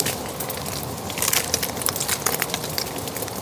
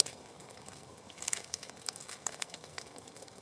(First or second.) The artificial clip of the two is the second